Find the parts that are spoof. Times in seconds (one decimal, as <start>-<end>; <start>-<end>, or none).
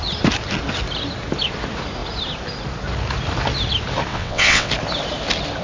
4.1-4.7